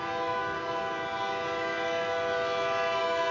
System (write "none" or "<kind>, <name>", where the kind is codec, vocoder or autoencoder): none